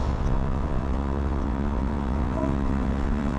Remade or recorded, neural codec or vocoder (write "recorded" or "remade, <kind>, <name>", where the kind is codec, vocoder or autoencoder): remade, vocoder, WaveNeXt